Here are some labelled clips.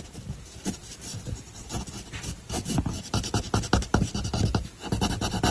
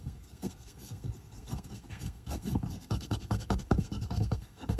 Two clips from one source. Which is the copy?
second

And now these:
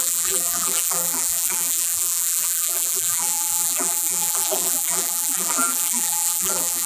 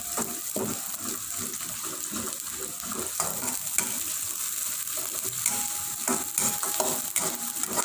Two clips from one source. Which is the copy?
first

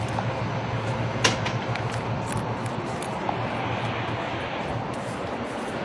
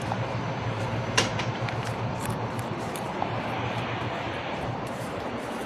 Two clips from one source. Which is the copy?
second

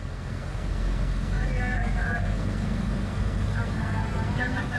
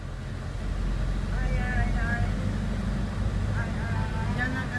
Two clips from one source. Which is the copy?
first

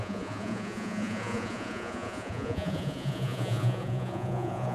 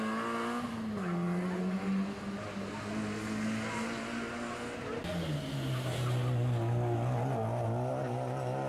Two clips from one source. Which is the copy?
first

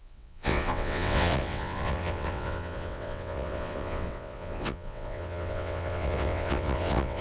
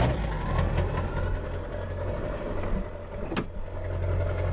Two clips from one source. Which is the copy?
first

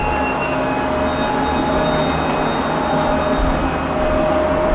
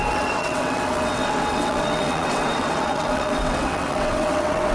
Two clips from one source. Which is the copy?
second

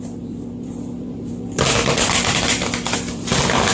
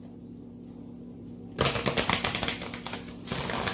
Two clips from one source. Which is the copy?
first